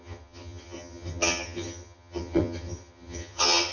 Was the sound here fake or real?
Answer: fake